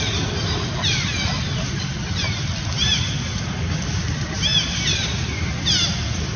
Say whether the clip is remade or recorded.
recorded